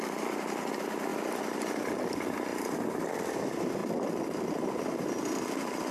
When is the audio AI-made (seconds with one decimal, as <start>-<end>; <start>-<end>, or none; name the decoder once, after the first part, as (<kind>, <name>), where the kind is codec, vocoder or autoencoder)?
1.1-2.0 (vocoder, BigVGAN v2); 2.5-3.1